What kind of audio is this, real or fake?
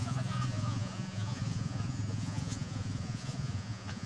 fake